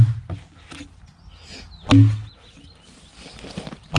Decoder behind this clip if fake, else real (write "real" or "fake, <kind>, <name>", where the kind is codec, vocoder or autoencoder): real